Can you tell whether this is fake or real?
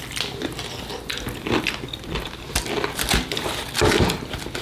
real